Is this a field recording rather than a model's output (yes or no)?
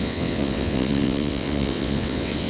no